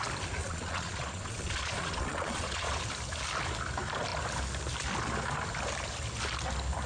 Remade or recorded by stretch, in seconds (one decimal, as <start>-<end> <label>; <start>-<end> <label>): 0.0-0.4 recorded; 0.4-2.8 remade; 2.8-6.9 recorded